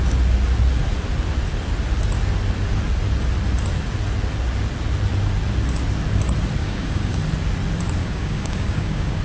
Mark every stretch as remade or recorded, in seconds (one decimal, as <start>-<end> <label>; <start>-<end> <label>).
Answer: 0.0-6.6 recorded; 6.6-7.2 remade; 7.2-8.0 recorded; 8.0-9.2 remade